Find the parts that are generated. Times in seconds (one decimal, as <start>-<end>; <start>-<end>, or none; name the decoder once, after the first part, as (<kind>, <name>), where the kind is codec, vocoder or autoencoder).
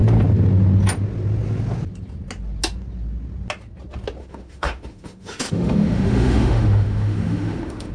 4.2-7.9 (autoencoder, DAC-VAE)